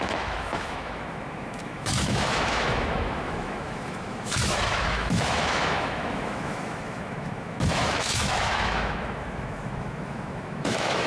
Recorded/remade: remade